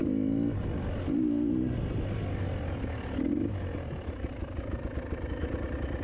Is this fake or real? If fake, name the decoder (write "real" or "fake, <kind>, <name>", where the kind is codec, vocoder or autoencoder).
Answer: real